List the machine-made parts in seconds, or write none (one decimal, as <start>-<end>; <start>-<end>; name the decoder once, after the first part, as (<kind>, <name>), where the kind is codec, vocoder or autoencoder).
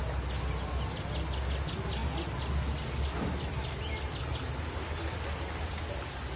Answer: none